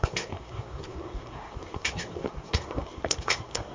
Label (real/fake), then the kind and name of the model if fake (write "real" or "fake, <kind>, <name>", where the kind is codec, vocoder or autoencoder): fake, codec, SNAC